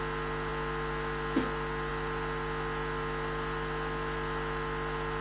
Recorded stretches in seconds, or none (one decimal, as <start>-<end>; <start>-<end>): 0.0-5.2

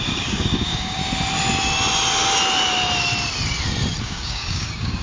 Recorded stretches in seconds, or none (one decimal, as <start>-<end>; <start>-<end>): 1.0-4.0

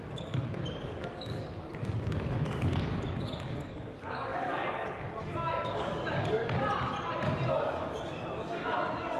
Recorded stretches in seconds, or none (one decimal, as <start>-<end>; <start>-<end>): 6.4-7.5

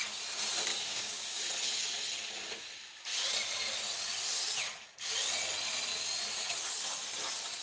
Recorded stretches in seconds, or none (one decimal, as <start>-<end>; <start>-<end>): 0.0-0.7; 1.4-7.6